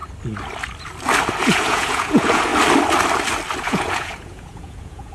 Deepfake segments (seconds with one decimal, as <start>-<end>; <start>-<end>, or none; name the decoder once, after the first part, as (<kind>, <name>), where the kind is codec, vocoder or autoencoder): 1.4-2.5 (vocoder, Vocos); 3.6-5.1